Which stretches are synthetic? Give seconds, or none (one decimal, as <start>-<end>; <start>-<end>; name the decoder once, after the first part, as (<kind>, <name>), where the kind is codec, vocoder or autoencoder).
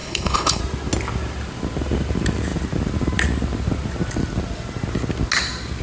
0.0-0.6 (codec, HILCodec)